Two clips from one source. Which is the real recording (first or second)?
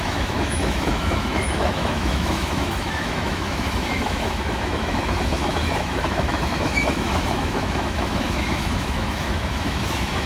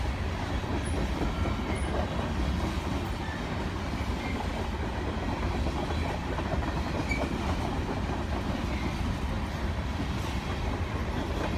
second